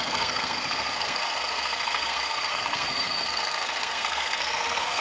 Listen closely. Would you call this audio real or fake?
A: fake